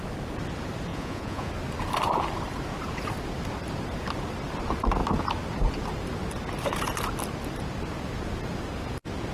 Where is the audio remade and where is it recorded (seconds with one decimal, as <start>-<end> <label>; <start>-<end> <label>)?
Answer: 0.0-0.9 recorded; 0.9-1.5 remade; 1.5-9.3 recorded